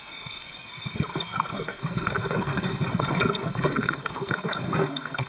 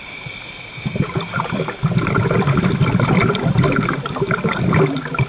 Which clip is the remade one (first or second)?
first